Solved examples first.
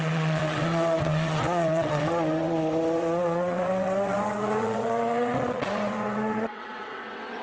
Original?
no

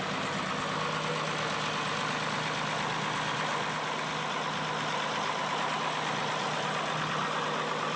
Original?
yes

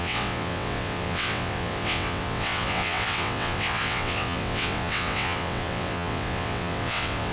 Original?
no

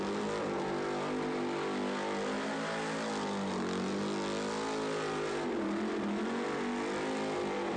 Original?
yes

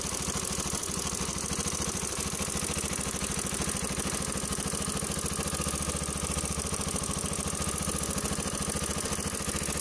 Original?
yes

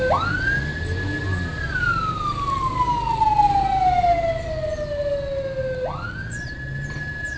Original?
yes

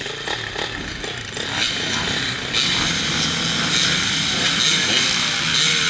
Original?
yes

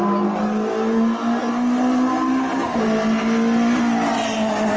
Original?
yes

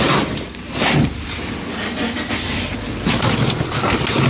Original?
yes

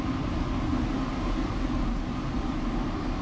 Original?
yes